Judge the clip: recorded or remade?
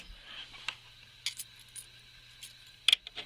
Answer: recorded